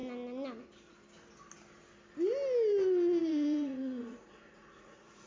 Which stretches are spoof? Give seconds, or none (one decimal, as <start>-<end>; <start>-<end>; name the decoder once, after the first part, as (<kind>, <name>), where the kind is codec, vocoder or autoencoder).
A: 3.2-5.3 (vocoder, Vocos)